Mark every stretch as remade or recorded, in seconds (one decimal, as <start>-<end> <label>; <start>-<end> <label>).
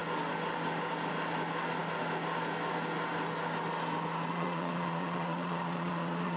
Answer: 0.0-4.3 recorded; 4.3-6.4 remade